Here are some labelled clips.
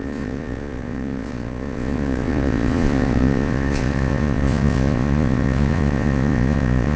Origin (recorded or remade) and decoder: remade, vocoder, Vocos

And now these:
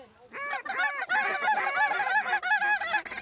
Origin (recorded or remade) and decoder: recorded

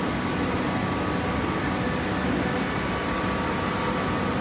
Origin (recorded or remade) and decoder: recorded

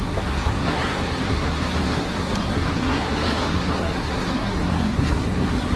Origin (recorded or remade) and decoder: remade, codec, SNAC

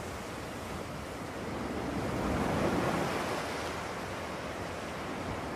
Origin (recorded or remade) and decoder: recorded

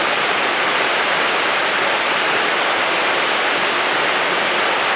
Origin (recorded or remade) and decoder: recorded